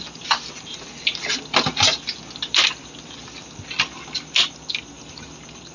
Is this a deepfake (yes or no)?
no